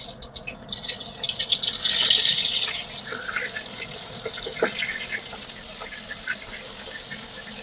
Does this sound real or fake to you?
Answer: real